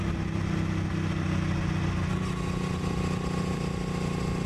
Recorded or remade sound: recorded